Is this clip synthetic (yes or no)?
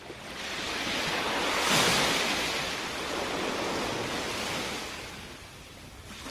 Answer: no